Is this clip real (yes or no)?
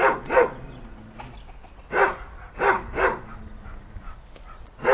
yes